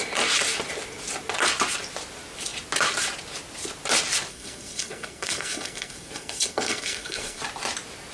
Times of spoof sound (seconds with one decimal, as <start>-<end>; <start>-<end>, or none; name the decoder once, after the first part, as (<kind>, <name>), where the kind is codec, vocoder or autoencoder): 4.3-7.4 (codec, SNAC)